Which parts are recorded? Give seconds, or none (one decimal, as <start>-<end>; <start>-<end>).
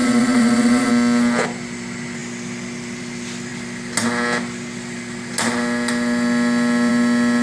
0.9-7.4